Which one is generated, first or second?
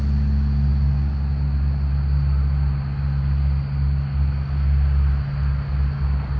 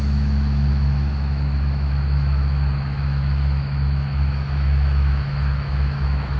second